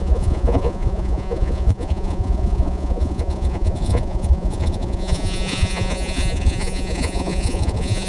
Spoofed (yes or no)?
yes